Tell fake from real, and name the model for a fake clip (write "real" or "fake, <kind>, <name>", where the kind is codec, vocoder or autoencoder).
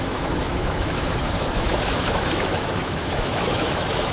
fake, autoencoder, DAC-VAE